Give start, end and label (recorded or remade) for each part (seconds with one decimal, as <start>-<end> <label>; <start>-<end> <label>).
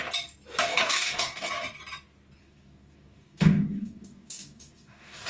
0.0-0.7 recorded; 0.7-1.5 remade; 1.5-2.4 recorded; 2.4-5.3 remade